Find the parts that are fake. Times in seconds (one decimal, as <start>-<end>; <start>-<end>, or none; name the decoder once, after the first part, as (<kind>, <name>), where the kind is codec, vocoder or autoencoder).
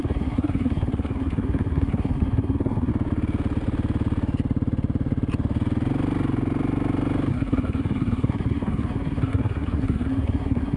0.0-2.9 (codec, SNAC); 7.3-10.8